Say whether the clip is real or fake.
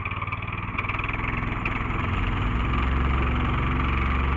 real